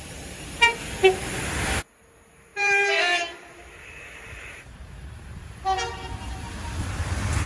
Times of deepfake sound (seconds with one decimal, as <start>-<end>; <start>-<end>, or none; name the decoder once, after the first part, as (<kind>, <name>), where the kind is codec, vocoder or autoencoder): 2.5-6.5 (vocoder, BigVGAN v2)